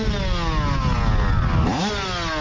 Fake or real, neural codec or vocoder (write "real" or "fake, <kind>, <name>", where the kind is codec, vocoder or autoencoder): real